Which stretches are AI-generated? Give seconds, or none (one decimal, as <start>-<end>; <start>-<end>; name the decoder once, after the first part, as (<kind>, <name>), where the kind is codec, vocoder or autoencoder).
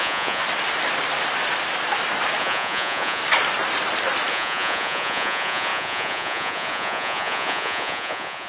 0.0-0.4 (vocoder, Vocos); 2.4-3.2; 4.3-8.5